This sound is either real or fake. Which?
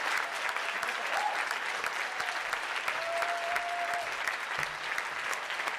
real